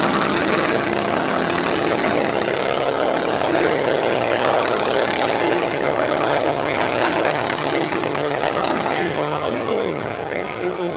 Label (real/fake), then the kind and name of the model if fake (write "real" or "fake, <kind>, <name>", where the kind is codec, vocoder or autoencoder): fake, vocoder, HiFi-GAN